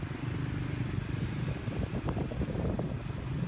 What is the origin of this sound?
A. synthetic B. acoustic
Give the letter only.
B